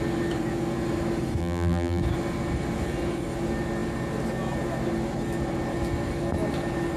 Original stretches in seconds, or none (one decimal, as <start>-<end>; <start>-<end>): 0.0-1.4; 2.0-7.0